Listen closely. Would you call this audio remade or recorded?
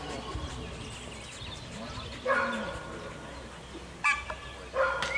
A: recorded